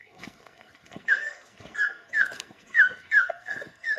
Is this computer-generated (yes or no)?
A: yes